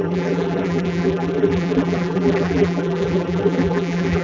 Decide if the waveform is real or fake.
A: fake